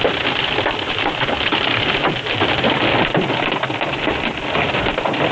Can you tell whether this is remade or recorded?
remade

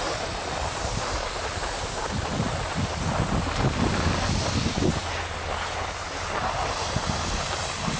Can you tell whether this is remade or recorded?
recorded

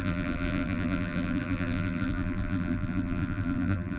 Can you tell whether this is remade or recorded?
remade